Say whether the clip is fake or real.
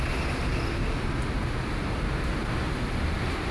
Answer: real